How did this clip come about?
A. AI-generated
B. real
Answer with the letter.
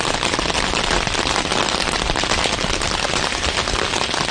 B